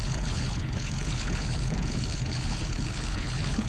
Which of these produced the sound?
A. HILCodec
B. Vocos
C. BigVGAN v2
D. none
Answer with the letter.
A